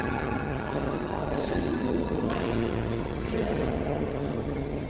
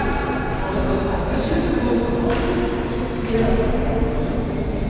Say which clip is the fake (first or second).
first